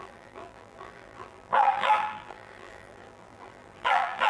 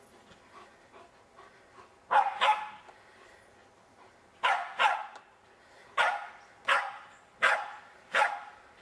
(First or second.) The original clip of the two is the second